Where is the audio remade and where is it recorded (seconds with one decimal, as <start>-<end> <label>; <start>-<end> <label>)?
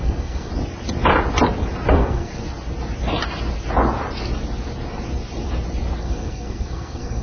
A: 0.0-0.5 remade; 0.5-1.9 recorded; 1.9-2.3 remade; 2.3-6.0 recorded; 6.0-7.2 remade